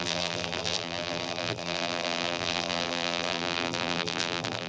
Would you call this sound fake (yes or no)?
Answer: yes